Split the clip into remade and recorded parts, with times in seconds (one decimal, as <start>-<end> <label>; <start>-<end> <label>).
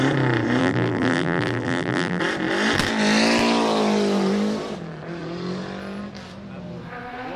0.0-0.6 recorded; 0.6-2.2 remade; 2.2-7.4 recorded